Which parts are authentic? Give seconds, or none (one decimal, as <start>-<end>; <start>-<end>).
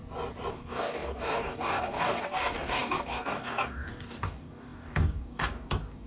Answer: 0.0-0.5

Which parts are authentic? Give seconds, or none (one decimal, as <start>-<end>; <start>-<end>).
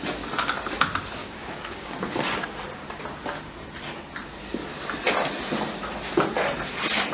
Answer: 0.0-1.2; 2.1-7.1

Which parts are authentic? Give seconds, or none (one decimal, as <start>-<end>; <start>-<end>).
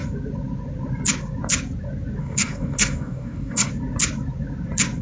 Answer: 0.0-2.2; 3.7-5.0